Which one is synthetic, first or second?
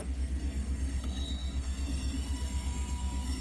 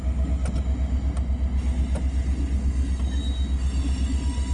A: first